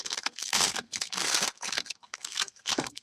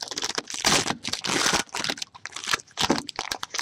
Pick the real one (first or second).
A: second